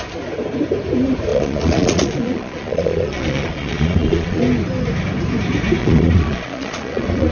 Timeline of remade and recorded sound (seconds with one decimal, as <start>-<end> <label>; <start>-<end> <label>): 0.0-1.3 recorded; 1.3-4.4 remade; 4.4-5.8 recorded; 5.8-7.3 remade